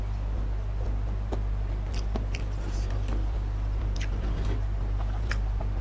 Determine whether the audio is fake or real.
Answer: real